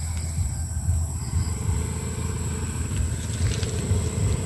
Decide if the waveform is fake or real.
real